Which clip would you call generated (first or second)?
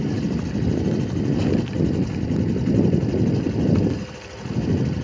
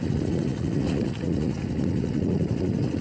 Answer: second